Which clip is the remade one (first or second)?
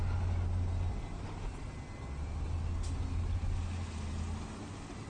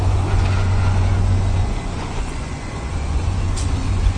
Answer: second